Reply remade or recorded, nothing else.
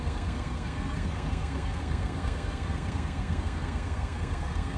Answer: remade